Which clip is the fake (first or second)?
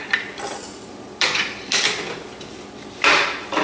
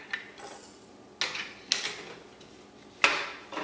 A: first